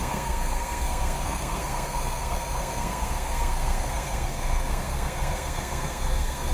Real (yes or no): no